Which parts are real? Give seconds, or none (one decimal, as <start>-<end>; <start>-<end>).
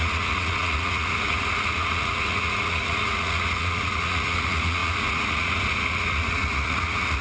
none